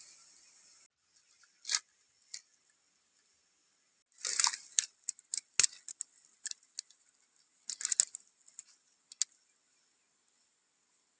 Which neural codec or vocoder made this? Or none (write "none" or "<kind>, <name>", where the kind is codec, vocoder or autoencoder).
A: none